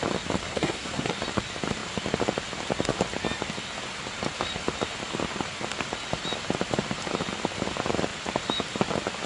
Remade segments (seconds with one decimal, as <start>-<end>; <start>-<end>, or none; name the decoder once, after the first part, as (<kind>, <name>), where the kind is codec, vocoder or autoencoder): 0.4-1.1 (codec, SNAC)

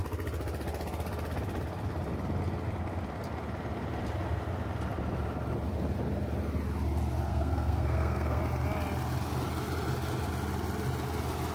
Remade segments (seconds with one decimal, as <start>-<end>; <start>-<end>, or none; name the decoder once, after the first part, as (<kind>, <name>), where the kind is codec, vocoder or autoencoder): 7.3-8.4 (codec, SNAC)

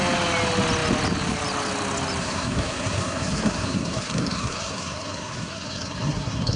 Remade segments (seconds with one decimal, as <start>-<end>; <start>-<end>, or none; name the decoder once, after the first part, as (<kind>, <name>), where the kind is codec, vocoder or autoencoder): 2.2-6.6 (codec, SNAC)